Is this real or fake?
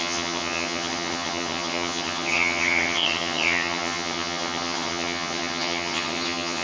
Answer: fake